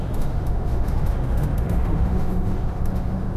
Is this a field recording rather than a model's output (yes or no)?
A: no